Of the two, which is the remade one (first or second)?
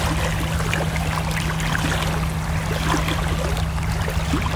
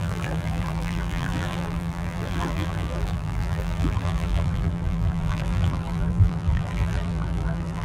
second